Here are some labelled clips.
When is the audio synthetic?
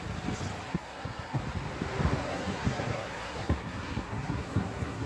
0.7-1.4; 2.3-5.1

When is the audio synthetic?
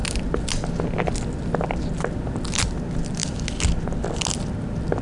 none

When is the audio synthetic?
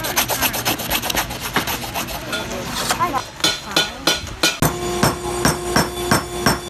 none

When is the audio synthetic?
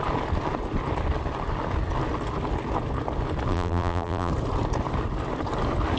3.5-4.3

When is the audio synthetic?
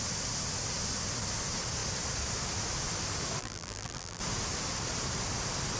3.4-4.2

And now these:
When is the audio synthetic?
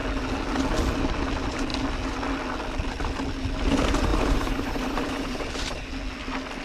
4.1-5.9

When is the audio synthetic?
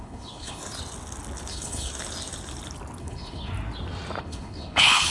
0.0-0.6; 1.5-1.9; 3.0-3.5; 4.2-5.1